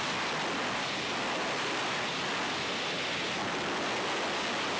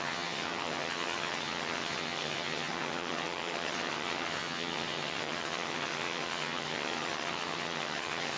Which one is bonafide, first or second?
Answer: first